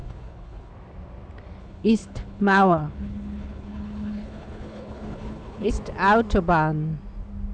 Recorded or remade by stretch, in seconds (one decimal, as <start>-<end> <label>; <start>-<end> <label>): 0.0-0.7 remade; 0.7-1.6 recorded; 1.6-5.7 remade; 5.7-7.5 recorded